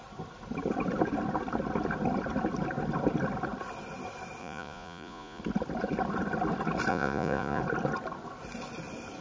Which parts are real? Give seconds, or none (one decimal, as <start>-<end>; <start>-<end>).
0.0-4.4; 5.4-6.9; 7.6-9.2